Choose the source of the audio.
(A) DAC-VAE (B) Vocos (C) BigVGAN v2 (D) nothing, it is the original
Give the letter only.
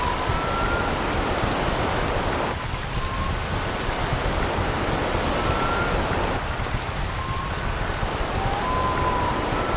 D